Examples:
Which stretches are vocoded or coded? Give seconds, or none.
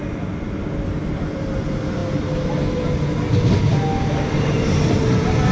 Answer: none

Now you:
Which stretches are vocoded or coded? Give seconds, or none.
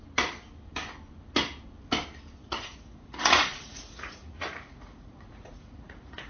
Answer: 2.4-6.3 (vocoder, Vocos)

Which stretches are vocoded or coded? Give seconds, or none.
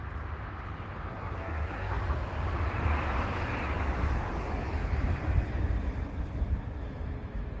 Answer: 1.1-2.0 (codec, SNAC)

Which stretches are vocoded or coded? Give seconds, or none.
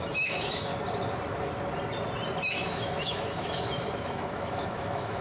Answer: 0.0-0.7 (autoencoder, DAC-VAE); 2.5-5.2